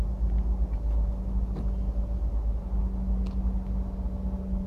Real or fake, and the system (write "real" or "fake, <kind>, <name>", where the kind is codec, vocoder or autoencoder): real